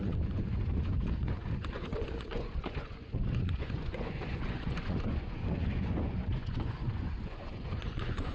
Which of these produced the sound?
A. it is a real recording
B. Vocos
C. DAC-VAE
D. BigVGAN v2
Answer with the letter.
B